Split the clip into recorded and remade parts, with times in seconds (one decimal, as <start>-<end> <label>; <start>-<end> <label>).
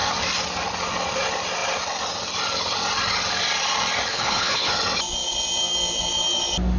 0.0-4.1 recorded; 4.1-4.7 remade; 4.7-6.8 recorded